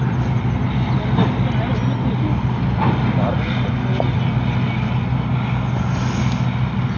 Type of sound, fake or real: real